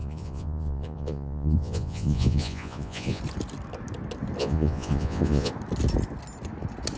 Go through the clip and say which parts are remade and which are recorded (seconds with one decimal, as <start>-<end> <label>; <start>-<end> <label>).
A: 0.0-3.2 remade; 3.2-4.4 recorded; 4.4-5.5 remade; 5.5-7.0 recorded